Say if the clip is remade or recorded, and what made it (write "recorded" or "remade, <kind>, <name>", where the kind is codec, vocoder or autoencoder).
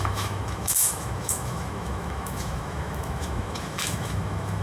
remade, autoencoder, DAC-VAE